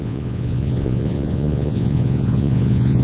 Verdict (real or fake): fake